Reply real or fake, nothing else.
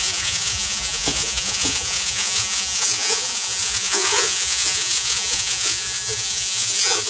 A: fake